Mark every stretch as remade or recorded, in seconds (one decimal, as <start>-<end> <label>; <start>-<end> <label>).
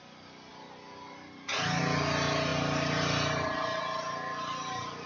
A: 0.0-2.5 recorded; 2.5-3.8 remade; 3.8-5.1 recorded